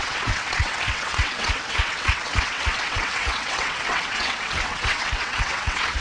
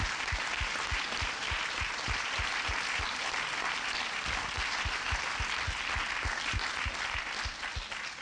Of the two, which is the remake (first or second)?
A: first